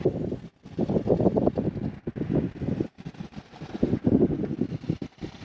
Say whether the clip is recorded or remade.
recorded